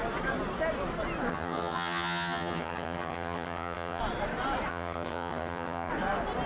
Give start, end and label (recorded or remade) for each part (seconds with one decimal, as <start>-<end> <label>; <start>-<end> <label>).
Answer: 0.0-1.3 recorded; 1.3-4.0 remade; 4.0-4.7 recorded; 4.7-5.9 remade; 5.9-6.5 recorded